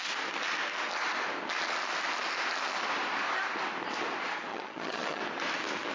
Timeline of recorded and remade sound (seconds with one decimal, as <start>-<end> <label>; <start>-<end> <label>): 0.0-4.5 recorded; 4.5-5.2 remade; 5.2-5.9 recorded

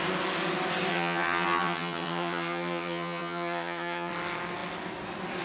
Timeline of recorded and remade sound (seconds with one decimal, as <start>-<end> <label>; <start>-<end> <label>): 0.0-0.9 recorded; 0.9-4.1 remade; 4.1-5.4 recorded

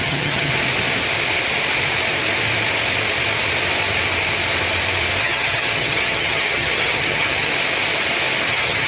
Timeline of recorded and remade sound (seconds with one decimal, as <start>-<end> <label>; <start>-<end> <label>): 0.0-0.5 remade; 0.5-5.2 recorded; 5.2-7.5 remade; 7.5-8.5 recorded; 8.5-8.9 remade

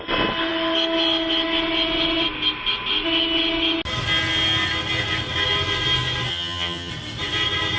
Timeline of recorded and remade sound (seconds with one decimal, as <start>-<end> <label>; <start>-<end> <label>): 0.0-6.3 recorded; 6.3-6.9 remade; 6.9-7.8 recorded